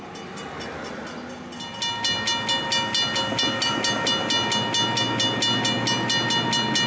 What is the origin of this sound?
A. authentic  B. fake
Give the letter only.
A